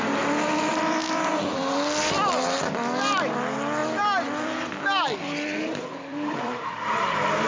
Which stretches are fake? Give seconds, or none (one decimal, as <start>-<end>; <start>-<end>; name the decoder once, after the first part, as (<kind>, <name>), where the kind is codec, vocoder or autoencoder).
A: 0.7-1.4 (vocoder, BigVGAN v2); 3.8-7.1